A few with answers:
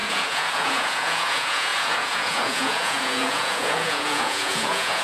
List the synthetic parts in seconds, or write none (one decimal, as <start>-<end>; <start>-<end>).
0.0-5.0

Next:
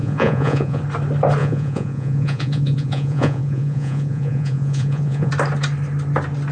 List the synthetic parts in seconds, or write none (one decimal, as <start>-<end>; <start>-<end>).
0.0-0.8; 1.4-5.3

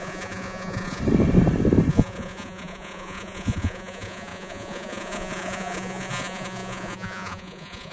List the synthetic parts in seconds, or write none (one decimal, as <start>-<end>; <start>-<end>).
0.0-1.0; 1.9-7.9

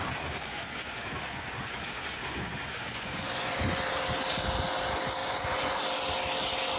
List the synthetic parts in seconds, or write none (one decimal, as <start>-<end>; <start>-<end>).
0.0-3.8; 5.2-5.8

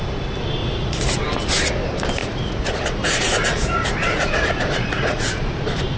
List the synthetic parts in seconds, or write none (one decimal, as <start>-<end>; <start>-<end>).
0.6-1.2; 2.2-5.6

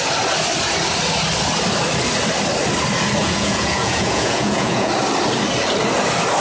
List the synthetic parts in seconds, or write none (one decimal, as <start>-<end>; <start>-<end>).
3.2-4.9

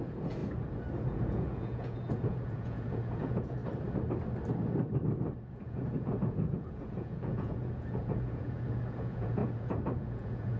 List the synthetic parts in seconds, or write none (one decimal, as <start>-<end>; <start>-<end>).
0.0-0.4; 1.0-3.6; 5.5-10.6

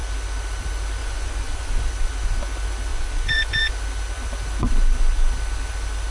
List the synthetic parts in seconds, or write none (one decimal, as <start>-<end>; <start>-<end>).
1.0-1.9; 2.9-3.7